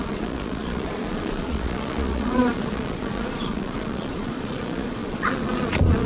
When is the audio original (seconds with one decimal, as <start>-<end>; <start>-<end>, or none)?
none